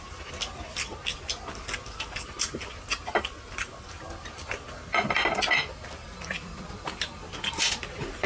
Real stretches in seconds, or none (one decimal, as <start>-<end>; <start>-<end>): 0.9-4.4; 4.9-5.9